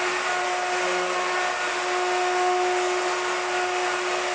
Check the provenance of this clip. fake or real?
real